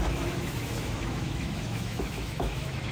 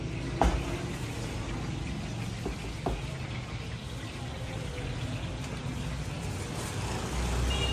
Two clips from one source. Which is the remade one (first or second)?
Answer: first